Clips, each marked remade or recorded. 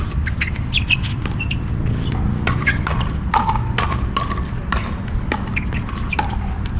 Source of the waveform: recorded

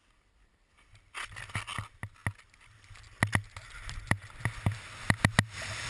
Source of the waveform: recorded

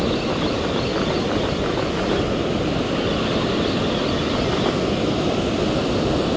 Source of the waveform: recorded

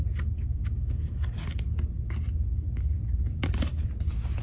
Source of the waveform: recorded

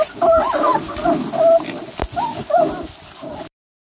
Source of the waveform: recorded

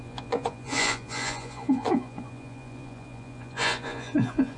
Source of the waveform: remade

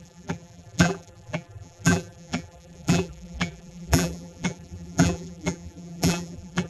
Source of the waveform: remade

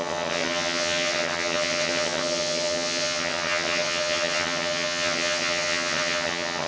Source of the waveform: remade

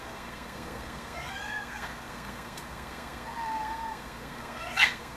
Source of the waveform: remade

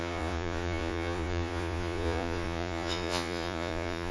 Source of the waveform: remade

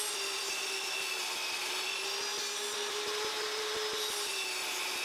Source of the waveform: recorded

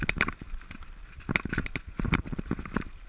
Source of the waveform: recorded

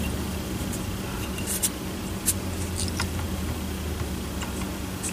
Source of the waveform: recorded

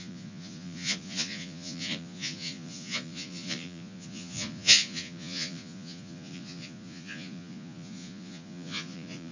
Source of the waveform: remade